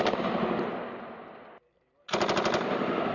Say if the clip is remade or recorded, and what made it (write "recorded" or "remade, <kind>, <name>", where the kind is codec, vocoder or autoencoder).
recorded